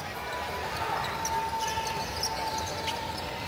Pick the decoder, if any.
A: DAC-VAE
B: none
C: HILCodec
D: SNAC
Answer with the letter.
B